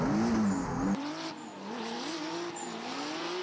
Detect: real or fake real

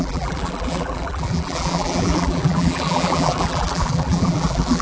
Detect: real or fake fake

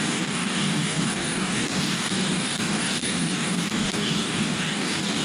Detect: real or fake fake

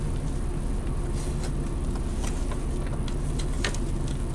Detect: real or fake real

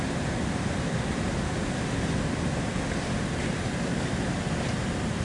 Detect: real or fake real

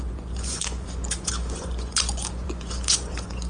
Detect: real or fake fake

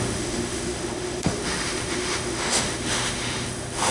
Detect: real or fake fake